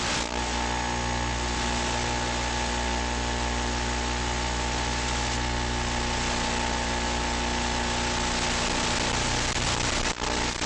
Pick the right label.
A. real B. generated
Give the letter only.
A